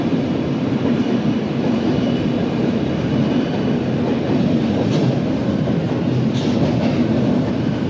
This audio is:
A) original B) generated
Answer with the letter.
A